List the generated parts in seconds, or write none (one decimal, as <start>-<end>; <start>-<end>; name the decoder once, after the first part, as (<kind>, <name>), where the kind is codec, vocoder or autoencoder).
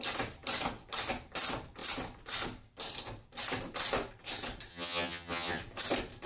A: 4.7-5.6 (vocoder, HiFi-GAN)